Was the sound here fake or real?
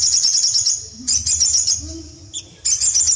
real